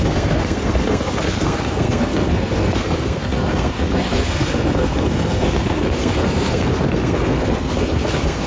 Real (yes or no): no